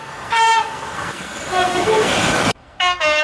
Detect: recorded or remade remade